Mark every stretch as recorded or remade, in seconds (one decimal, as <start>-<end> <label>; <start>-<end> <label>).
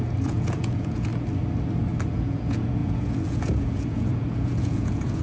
0.0-1.1 remade; 1.1-2.1 recorded; 2.1-5.2 remade